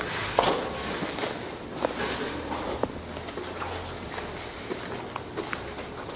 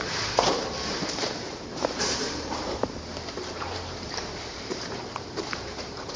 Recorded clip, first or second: first